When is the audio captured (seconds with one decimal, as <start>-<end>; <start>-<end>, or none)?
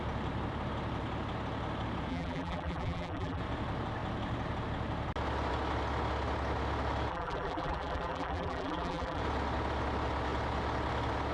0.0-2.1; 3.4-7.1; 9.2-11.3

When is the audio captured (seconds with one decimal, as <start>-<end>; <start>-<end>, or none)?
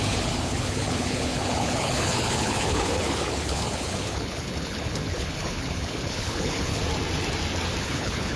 6.8-7.8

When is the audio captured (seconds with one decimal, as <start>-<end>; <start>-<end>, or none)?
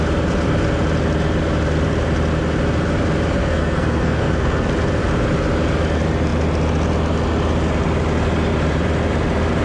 0.0-3.4; 4.7-9.6